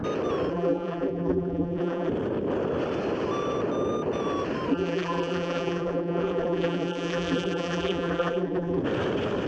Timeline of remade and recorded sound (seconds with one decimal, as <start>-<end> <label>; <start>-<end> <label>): 0.0-0.5 recorded; 0.5-2.1 remade; 2.1-4.7 recorded; 4.7-8.8 remade; 8.8-9.5 recorded